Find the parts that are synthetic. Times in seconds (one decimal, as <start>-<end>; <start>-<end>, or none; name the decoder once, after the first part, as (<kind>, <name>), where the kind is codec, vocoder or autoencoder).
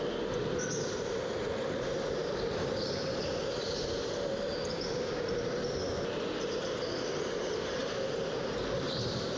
2.2-3.8 (vocoder, BigVGAN v2)